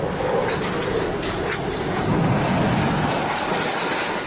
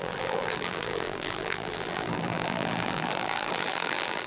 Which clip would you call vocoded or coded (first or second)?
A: second